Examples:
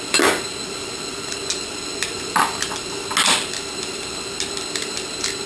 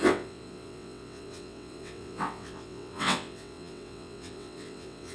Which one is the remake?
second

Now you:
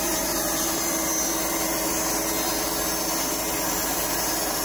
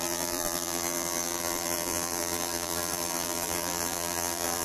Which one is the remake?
second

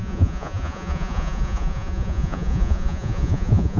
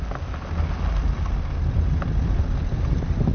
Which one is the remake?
first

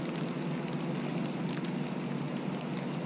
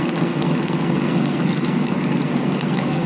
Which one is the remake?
second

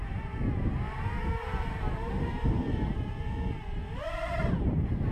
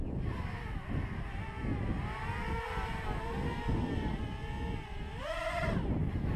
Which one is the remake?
first